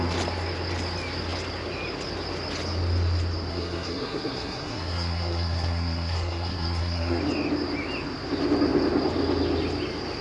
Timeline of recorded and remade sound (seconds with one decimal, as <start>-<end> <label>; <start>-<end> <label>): 0.0-3.5 recorded; 3.5-7.2 remade; 7.2-10.2 recorded